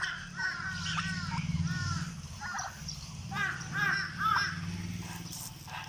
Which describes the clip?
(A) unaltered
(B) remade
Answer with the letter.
A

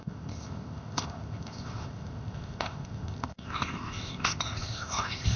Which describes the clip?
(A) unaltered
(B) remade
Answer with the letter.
B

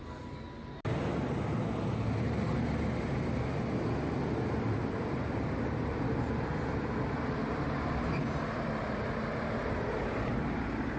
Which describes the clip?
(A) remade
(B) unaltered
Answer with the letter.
B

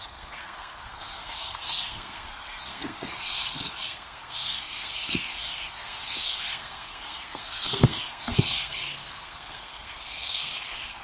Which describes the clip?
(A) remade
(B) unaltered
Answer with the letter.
A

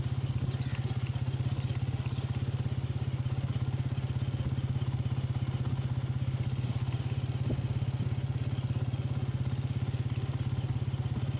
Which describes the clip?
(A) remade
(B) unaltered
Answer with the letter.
B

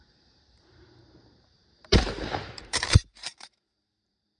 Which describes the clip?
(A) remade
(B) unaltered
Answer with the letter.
A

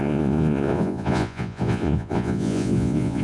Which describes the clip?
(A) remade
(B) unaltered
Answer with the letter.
A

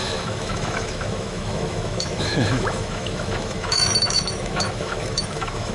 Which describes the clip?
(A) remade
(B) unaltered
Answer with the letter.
A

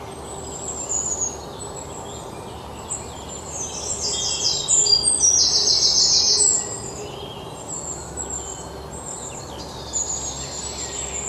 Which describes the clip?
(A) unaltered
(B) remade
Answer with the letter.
A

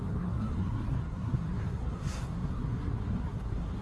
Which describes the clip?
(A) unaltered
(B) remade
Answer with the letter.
B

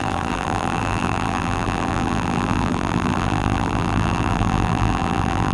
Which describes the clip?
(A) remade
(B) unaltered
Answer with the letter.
A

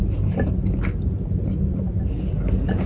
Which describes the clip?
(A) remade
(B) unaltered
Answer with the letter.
B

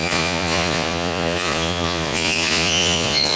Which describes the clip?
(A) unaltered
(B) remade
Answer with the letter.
B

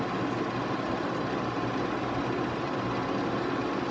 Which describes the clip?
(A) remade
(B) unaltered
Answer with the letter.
B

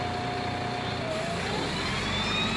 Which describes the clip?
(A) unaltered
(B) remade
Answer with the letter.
A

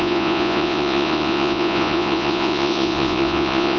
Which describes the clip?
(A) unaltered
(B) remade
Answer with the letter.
B